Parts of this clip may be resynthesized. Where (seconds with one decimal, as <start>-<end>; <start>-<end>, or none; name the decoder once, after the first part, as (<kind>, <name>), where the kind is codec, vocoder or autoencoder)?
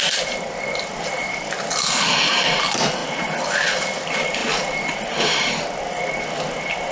0.0-3.0 (vocoder, BigVGAN v2); 4.0-4.4; 5.2-6.9